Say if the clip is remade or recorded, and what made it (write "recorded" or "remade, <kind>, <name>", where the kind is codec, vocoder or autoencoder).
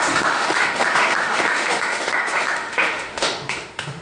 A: remade, autoencoder, DAC-VAE